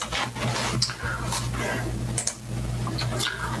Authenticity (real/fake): real